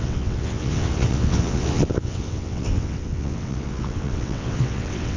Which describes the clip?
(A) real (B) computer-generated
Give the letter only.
B